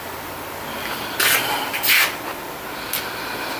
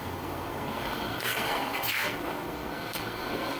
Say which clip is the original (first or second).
first